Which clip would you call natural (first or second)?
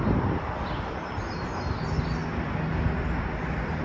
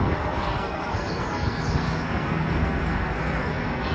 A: first